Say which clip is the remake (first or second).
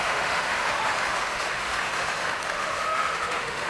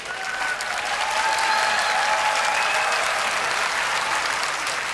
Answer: first